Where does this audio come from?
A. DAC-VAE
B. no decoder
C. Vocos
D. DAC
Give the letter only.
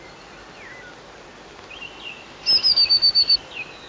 B